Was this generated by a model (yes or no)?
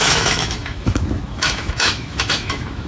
yes